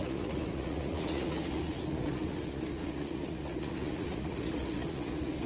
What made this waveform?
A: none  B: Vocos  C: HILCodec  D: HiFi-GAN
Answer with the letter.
B